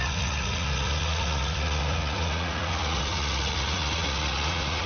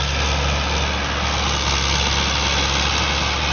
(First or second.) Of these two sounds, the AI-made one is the first